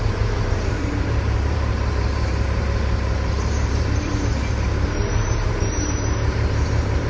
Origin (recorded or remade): remade